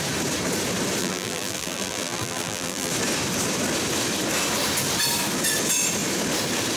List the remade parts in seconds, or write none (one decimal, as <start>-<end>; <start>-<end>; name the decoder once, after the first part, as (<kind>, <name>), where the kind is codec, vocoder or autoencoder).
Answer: 1.0-2.9 (vocoder, BigVGAN v2)